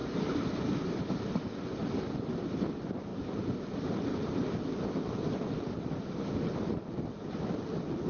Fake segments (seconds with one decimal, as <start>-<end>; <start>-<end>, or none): 0.0-1.5